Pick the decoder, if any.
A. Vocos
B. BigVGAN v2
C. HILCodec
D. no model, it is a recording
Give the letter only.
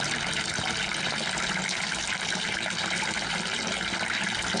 D